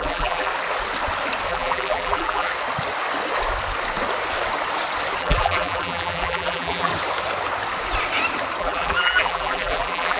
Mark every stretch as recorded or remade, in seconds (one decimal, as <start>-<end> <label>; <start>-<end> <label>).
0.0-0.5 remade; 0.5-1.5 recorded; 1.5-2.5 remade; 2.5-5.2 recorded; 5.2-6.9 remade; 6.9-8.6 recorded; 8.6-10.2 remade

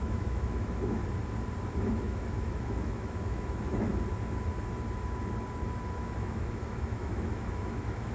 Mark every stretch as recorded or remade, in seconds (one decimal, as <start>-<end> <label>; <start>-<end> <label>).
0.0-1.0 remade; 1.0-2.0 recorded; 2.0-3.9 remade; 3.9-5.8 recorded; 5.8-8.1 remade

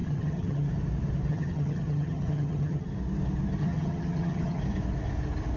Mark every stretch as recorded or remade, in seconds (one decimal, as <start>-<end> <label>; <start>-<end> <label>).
0.0-0.7 remade; 0.7-1.3 recorded; 1.3-2.9 remade; 2.9-3.6 recorded; 3.6-4.6 remade; 4.6-5.6 recorded

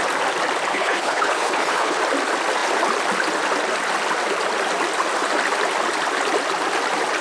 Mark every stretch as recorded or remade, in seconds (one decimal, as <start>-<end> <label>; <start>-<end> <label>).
0.0-0.7 recorded; 0.7-2.0 remade; 2.0-7.2 recorded